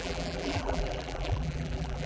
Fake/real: fake